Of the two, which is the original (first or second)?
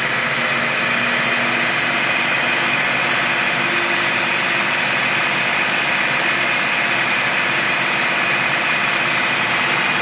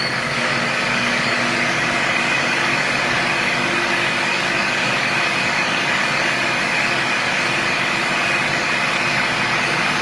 first